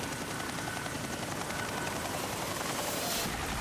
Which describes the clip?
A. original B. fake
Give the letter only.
B